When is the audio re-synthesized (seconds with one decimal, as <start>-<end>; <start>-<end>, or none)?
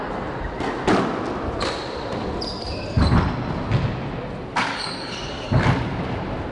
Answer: 4.5-5.5